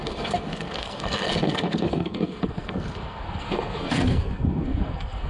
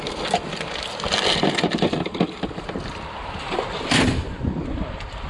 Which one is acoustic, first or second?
second